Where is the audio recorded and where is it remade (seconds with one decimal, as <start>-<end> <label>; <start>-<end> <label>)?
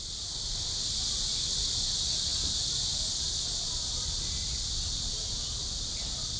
0.0-6.4 recorded